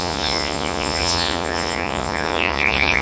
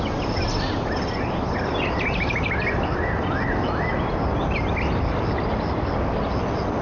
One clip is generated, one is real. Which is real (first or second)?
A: second